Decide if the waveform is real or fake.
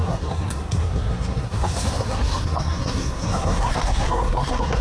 fake